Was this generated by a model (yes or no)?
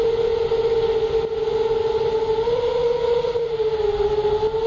no